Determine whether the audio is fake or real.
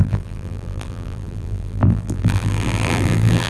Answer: fake